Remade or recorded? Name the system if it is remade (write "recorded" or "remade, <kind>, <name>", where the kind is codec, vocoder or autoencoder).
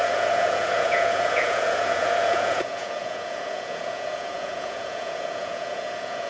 remade, vocoder, Vocos